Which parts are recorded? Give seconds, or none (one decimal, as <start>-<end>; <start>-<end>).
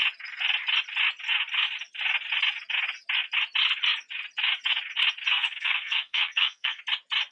0.0-5.3; 6.8-7.3